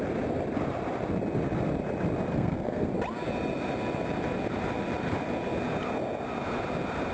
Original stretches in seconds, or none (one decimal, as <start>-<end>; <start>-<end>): 0.0-2.3; 2.9-7.1